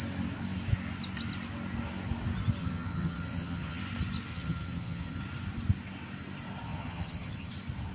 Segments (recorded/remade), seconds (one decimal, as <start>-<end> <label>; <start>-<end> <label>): 0.0-2.6 recorded; 2.6-3.8 remade; 3.8-4.3 recorded; 4.3-5.2 remade; 5.2-6.6 recorded; 6.6-7.5 remade; 7.5-7.9 recorded